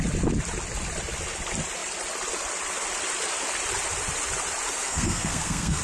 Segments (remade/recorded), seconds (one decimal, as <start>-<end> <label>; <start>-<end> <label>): 0.0-4.8 recorded; 4.8-5.8 remade